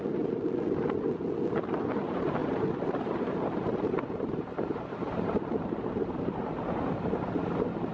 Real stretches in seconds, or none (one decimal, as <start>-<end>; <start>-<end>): 0.0-2.4; 7.1-7.9